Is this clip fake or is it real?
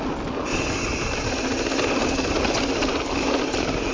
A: real